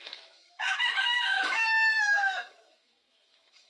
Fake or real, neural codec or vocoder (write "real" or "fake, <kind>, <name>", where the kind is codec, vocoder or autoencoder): fake, autoencoder, DAC-VAE